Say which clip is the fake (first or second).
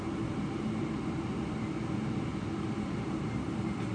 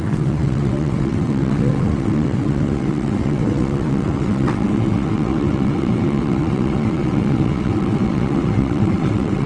second